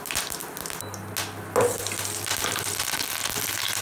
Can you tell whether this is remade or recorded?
recorded